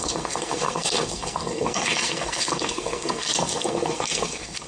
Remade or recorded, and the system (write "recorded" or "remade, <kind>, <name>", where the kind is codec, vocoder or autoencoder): remade, codec, SNAC